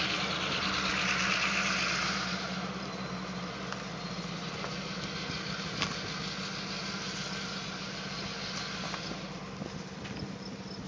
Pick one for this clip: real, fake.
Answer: real